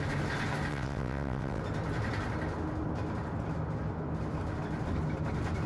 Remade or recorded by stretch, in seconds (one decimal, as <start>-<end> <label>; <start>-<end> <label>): 0.0-0.7 recorded; 0.7-1.6 remade; 1.6-5.7 recorded